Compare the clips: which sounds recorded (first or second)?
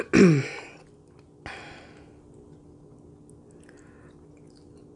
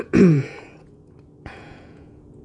first